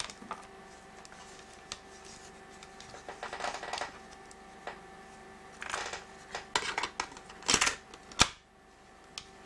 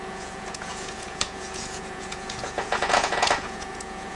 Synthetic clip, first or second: second